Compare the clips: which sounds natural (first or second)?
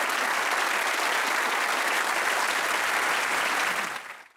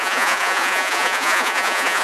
first